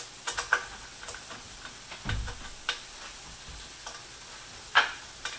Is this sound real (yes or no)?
yes